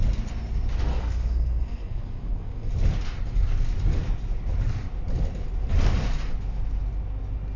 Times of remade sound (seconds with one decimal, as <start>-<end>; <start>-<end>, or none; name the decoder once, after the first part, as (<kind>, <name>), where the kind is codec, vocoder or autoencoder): 0.9-2.7 (codec, SNAC)